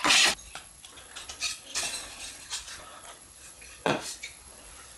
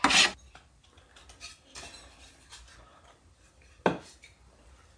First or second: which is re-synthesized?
first